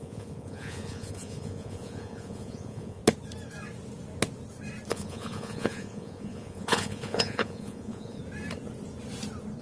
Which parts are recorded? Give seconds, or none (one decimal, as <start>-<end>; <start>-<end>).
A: 3.0-4.9; 8.2-9.6